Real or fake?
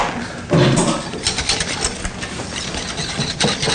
real